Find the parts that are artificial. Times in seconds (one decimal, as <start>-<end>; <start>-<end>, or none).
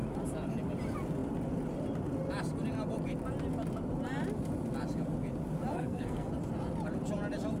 5.7-6.3